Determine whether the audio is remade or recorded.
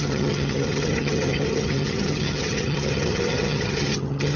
remade